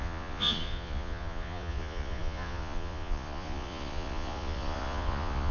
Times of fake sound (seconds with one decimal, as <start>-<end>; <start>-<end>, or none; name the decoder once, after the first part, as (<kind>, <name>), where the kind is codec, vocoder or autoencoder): 0.0-5.5 (vocoder, Vocos)